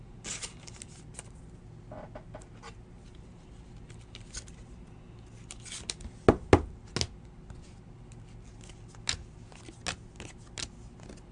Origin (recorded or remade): recorded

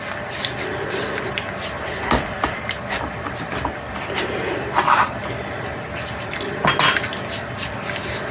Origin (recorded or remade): recorded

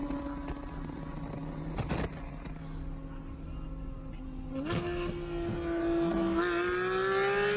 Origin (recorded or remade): recorded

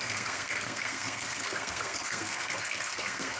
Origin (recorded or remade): remade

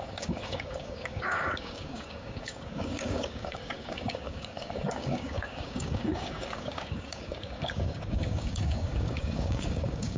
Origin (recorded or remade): remade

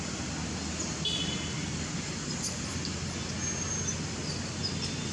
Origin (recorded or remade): recorded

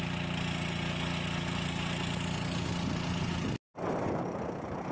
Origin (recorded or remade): recorded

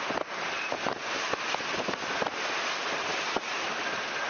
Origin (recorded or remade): recorded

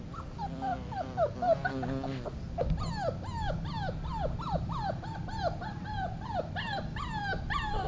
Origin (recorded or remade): recorded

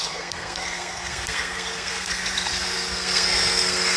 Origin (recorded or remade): remade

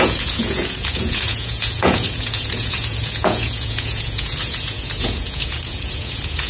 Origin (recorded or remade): remade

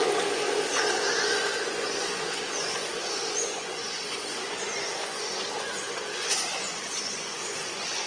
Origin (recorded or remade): remade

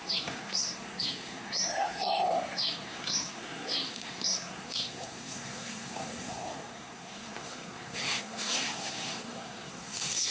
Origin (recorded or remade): remade